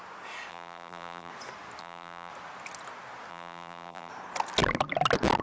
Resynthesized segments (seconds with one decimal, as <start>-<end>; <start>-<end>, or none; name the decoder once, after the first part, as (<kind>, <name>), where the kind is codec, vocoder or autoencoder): 0.5-1.3 (vocoder, BigVGAN v2); 1.8-2.3; 3.3-4.1